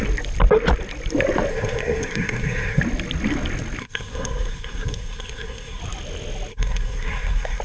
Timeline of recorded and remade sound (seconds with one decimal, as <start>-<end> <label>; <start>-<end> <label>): 0.0-1.5 recorded; 1.5-2.8 remade; 2.8-3.8 recorded; 3.8-5.8 remade; 5.8-6.5 recorded; 6.5-7.6 remade